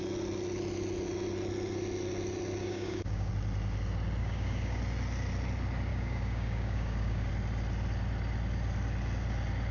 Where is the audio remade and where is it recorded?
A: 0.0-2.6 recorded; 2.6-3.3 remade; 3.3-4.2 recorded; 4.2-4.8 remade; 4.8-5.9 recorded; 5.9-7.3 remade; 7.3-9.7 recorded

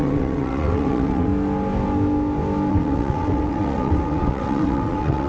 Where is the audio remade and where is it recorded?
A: 0.0-1.3 remade; 1.3-2.7 recorded; 2.7-5.3 remade

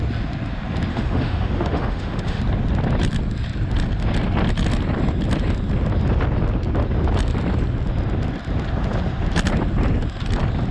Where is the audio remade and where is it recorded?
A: 0.0-0.9 recorded; 0.9-2.4 remade; 2.4-10.7 recorded